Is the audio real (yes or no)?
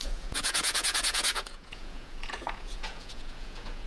no